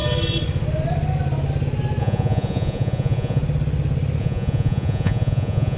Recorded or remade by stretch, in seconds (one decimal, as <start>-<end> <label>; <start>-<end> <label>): 0.0-2.0 recorded; 2.0-3.4 remade; 3.4-4.2 recorded; 4.2-5.8 remade